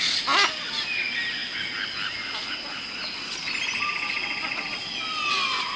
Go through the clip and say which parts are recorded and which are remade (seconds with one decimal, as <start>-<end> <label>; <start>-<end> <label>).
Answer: 0.0-5.8 recorded